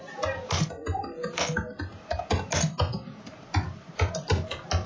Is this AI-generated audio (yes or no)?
no